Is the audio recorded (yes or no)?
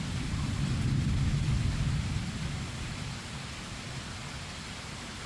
no